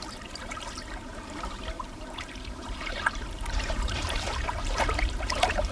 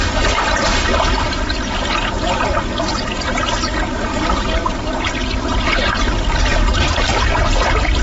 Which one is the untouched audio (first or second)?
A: second